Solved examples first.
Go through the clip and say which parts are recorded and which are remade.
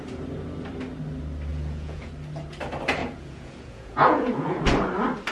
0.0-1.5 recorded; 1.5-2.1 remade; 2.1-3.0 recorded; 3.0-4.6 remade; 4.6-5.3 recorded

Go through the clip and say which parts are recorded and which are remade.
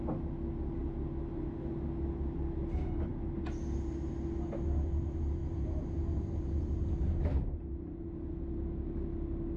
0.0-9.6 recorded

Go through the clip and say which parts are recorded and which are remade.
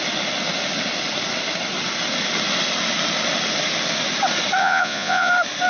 0.0-4.6 recorded; 4.6-5.3 remade; 5.3-5.7 recorded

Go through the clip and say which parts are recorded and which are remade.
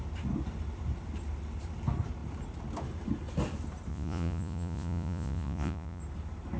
0.0-3.9 recorded; 3.9-6.0 remade; 6.0-6.6 recorded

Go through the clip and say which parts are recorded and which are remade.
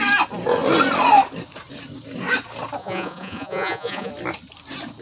0.0-2.8 recorded; 2.8-4.1 remade; 4.1-5.0 recorded